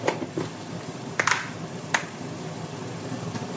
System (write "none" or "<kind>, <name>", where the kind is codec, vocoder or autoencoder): none